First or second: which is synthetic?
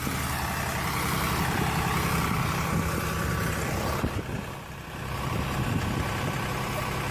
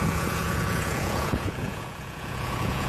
second